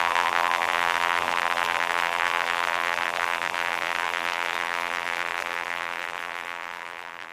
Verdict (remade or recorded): remade